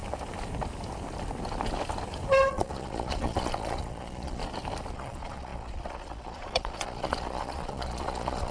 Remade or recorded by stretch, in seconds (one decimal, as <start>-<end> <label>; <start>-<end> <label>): 0.0-2.5 recorded; 2.5-4.4 remade; 4.4-4.9 recorded; 4.9-8.5 remade